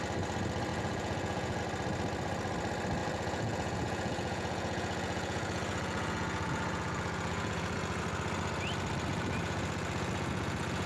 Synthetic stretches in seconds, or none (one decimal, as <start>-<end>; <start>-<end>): 0.7-1.6; 3.0-8.0; 9.1-10.9